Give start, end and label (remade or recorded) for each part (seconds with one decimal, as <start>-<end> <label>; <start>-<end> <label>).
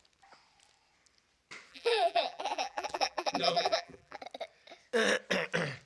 0.0-1.7 recorded; 1.7-4.2 remade; 4.2-5.9 recorded